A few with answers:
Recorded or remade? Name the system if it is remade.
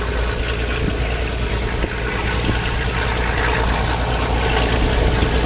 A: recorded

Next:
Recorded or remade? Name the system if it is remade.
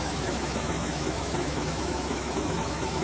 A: remade, autoencoder, DAC-VAE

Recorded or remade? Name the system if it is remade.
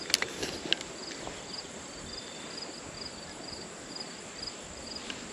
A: recorded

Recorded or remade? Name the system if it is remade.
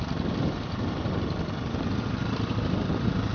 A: recorded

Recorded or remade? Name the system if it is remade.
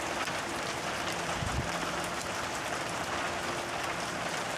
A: recorded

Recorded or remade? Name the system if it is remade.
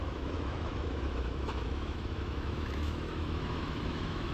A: remade, autoencoder, DAC-VAE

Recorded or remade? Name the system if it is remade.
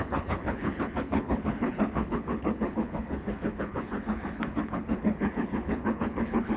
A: remade, codec, HILCodec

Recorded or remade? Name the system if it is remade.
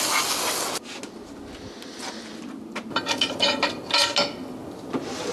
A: recorded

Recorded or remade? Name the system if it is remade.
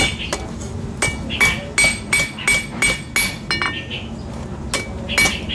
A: recorded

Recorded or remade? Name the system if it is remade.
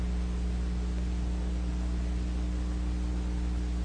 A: recorded